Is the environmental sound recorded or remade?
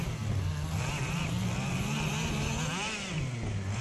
recorded